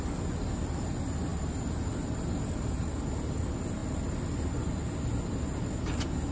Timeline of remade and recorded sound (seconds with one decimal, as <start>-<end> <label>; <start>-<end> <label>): 0.0-6.3 recorded